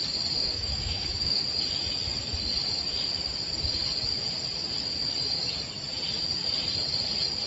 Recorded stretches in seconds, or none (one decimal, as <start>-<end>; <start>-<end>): 0.0-0.4; 1.4-7.5